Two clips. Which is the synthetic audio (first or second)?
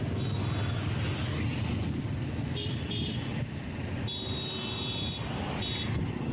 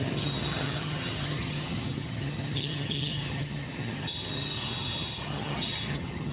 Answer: second